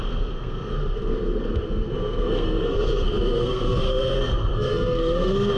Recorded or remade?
remade